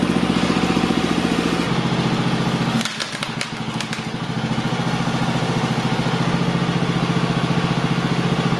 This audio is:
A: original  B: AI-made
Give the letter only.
A